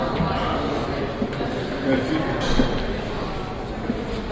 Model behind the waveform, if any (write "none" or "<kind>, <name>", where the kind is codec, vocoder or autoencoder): none